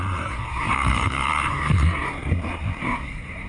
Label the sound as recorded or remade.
remade